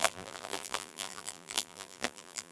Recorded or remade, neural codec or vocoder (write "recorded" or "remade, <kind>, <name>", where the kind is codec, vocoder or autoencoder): remade, vocoder, BigVGAN v2